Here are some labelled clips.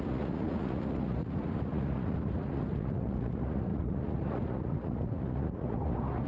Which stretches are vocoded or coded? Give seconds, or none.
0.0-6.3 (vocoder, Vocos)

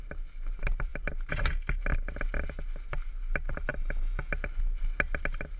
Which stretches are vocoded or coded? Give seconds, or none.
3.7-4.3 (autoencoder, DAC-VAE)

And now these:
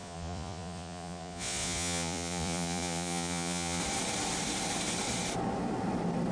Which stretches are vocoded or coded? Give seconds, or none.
0.0-3.8 (vocoder, Vocos)